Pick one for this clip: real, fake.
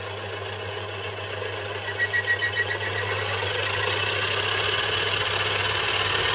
real